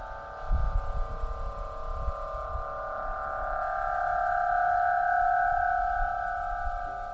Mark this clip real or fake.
real